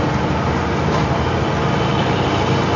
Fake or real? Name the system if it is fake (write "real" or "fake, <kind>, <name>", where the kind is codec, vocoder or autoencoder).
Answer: real